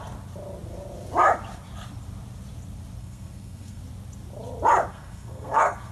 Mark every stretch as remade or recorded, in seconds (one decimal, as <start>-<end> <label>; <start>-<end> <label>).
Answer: 0.0-3.0 recorded; 3.0-3.8 remade; 3.8-4.9 recorded; 4.9-5.9 remade